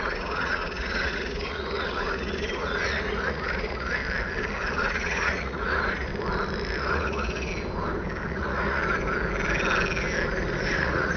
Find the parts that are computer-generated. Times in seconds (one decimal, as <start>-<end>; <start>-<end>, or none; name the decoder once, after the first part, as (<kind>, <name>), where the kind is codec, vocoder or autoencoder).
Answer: 0.0-4.0 (vocoder, Vocos); 4.7-6.1; 6.8-7.5; 8.3-8.8; 10.7-11.2

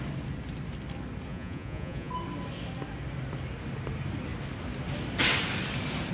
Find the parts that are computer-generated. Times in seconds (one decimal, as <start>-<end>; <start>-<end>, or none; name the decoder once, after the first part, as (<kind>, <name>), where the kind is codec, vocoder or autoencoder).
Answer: 1.3-2.1 (vocoder, Vocos)

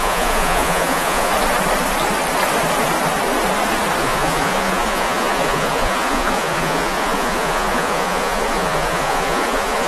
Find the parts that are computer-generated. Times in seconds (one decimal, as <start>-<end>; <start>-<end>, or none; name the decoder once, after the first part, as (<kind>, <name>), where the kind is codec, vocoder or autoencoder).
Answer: 0.0-1.3 (vocoder, Vocos); 4.0-9.9

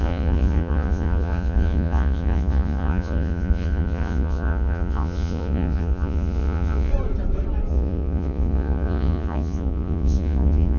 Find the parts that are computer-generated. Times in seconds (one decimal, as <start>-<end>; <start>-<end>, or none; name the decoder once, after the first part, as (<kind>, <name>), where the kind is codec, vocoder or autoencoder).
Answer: 0.0-6.9 (vocoder, Vocos); 7.7-10.8

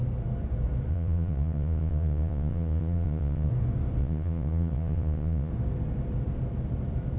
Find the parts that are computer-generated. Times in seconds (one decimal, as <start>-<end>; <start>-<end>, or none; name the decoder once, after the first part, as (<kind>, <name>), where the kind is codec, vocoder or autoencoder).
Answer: 0.9-3.5 (vocoder, Vocos); 4.0-5.5

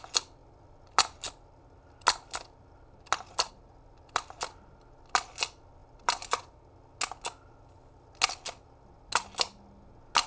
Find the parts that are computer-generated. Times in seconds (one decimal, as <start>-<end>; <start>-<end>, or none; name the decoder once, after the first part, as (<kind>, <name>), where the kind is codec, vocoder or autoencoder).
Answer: none